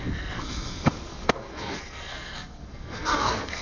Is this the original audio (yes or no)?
no